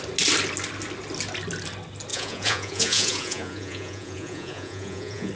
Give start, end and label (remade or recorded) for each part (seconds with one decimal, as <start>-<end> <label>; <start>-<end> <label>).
0.0-2.1 recorded; 2.1-5.3 remade